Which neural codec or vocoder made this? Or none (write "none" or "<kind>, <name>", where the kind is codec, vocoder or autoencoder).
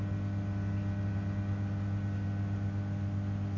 none